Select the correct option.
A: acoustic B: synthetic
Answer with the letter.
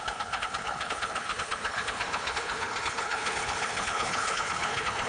B